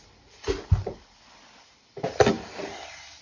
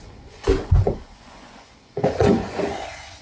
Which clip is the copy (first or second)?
second